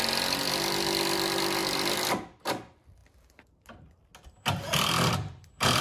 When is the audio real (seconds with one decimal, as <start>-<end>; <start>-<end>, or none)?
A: 0.0-5.8